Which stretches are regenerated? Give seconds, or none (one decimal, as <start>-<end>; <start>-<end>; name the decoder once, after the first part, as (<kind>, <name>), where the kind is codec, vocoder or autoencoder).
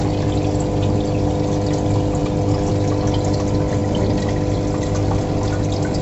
none